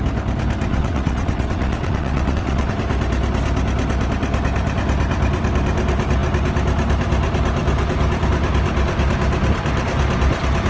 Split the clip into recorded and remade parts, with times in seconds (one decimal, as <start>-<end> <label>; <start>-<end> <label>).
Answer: 0.0-0.7 recorded; 0.7-2.7 remade; 2.7-10.7 recorded